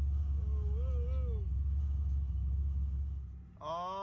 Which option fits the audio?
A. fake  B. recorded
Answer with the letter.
B